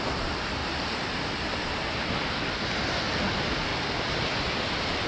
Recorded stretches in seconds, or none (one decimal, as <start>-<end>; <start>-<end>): 0.0-5.1